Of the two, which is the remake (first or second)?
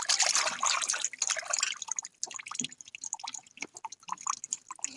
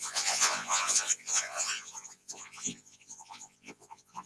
second